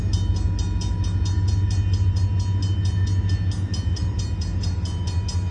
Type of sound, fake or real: real